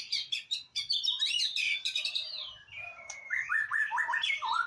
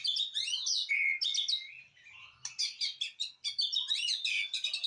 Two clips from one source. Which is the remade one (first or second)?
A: first